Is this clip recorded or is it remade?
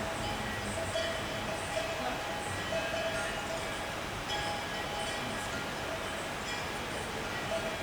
recorded